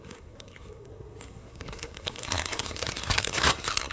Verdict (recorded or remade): remade